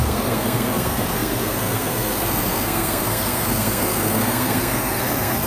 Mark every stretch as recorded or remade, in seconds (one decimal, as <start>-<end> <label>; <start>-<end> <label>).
0.0-5.5 remade